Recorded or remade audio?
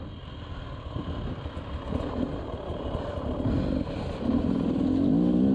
recorded